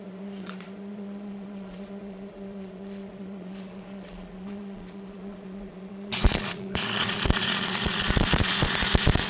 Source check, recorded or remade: remade